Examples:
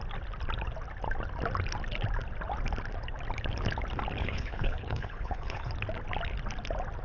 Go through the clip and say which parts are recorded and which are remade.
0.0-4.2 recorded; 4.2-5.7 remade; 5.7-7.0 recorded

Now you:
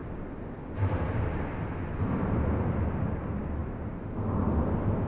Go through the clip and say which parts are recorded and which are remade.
0.0-3.0 remade; 3.0-5.1 recorded

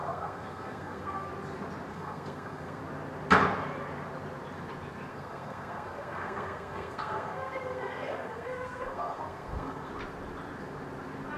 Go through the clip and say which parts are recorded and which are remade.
0.0-1.3 remade; 1.3-1.9 recorded; 1.9-2.8 remade; 2.8-5.1 recorded; 5.1-9.9 remade; 9.9-11.4 recorded